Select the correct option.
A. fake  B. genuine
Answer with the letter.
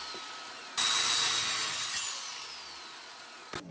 B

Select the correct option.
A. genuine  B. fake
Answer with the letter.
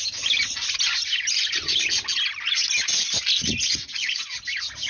A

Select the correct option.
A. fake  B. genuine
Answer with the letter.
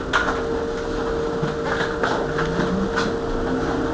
B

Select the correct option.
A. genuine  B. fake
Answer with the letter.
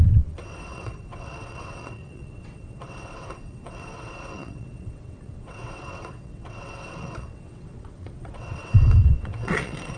B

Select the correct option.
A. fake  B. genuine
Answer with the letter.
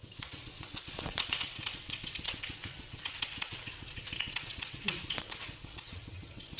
A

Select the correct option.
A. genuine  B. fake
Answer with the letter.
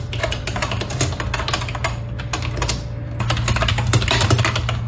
A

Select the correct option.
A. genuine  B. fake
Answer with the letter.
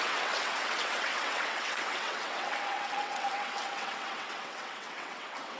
B